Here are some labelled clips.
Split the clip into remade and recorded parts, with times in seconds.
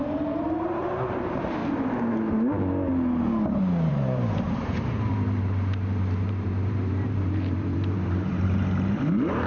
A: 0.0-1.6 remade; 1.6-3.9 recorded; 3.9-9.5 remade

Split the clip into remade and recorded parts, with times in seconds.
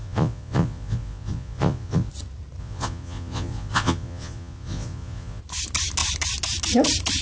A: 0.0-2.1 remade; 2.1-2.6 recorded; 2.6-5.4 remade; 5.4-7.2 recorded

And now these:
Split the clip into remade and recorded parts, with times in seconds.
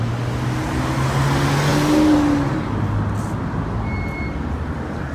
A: 0.0-5.1 recorded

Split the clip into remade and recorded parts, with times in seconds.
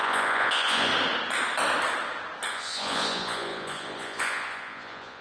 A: 0.0-0.9 remade; 0.9-2.5 recorded; 2.5-5.2 remade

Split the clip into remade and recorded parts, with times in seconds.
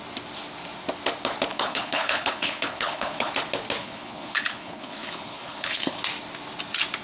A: 0.0-1.5 recorded; 1.5-3.3 remade; 3.3-3.8 recorded; 3.8-6.0 remade; 6.0-7.0 recorded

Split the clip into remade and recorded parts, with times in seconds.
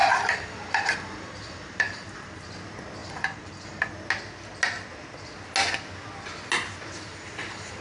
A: 0.0-2.4 remade; 2.4-3.0 recorded; 3.0-3.9 remade; 3.9-7.1 recorded; 7.1-7.8 remade